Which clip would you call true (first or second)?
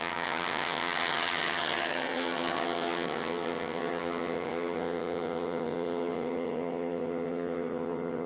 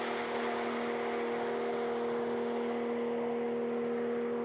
second